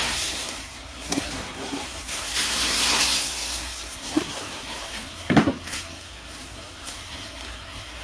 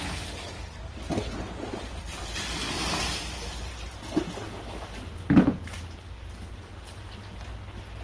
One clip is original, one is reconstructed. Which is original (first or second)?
second